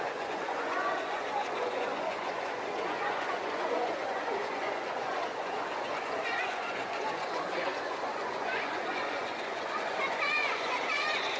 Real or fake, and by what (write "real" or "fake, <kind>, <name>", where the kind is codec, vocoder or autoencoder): fake, vocoder, Vocos